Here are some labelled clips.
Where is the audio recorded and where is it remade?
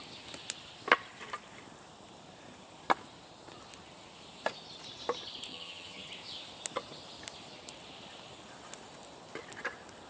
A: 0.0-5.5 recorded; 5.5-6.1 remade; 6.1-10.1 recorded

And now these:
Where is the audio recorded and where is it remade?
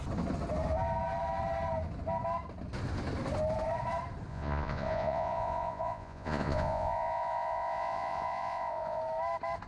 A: 0.0-4.3 recorded; 4.3-9.0 remade; 9.0-9.7 recorded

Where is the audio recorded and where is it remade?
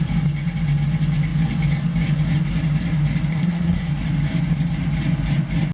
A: 0.0-3.3 recorded; 3.3-3.9 remade; 3.9-5.7 recorded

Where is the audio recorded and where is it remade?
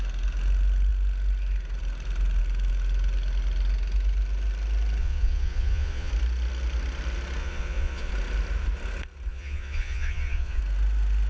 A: 0.0-5.0 recorded; 5.0-6.1 remade; 6.1-7.4 recorded; 7.4-8.1 remade; 8.1-9.3 recorded; 9.3-10.6 remade; 10.6-11.3 recorded